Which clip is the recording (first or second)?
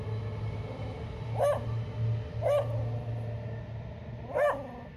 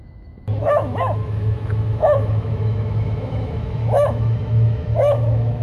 first